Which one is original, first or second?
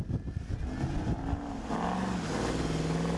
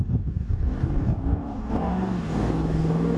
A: first